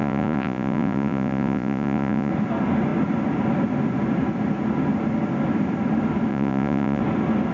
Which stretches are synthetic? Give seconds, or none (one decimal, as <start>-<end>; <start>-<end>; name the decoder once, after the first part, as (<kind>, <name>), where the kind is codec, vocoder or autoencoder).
0.0-2.3 (vocoder, Vocos); 6.3-7.0